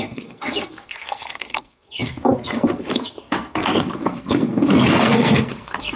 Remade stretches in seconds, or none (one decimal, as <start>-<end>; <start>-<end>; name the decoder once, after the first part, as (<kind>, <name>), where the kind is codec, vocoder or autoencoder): 0.0-6.0 (codec, SNAC)